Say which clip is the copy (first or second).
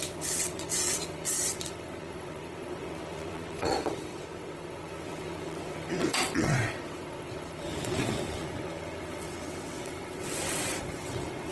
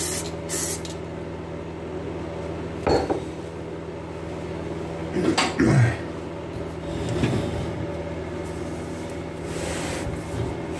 first